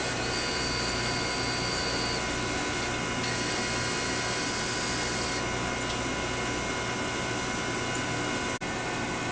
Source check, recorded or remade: recorded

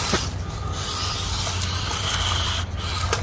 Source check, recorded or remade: remade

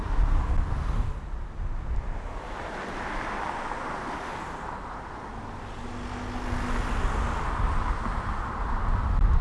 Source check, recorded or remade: recorded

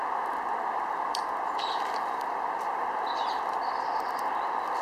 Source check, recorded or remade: remade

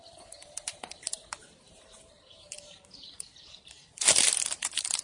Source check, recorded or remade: remade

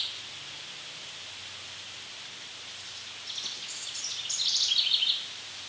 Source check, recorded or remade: recorded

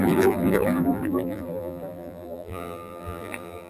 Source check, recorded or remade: remade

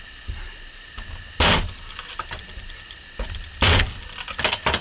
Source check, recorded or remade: recorded